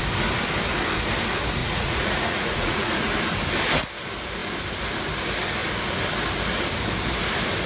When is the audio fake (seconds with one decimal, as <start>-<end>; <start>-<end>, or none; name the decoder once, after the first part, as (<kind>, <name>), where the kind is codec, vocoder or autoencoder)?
1.6-3.1 (vocoder, Vocos)